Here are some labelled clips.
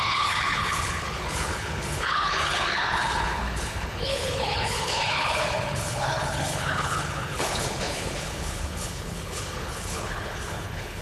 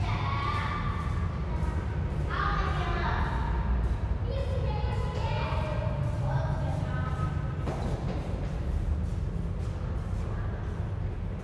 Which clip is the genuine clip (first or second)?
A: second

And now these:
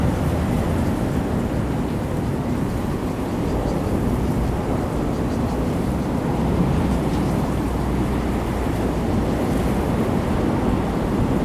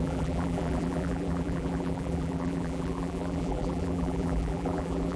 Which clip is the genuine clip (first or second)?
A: first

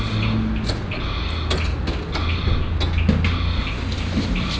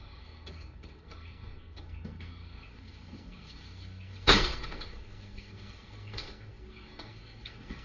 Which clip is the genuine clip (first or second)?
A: first